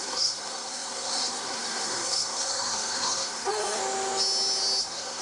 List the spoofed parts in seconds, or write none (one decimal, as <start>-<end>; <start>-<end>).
0.0-3.8; 4.8-5.2